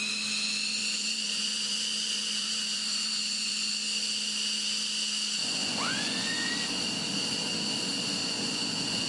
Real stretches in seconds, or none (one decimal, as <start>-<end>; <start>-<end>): 0.0-0.8; 3.7-5.4; 6.5-8.2